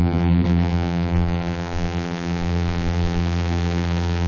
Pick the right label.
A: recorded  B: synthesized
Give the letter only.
B